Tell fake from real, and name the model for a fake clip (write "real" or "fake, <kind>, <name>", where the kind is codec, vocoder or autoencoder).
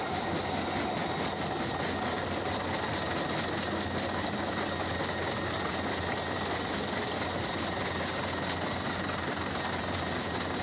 real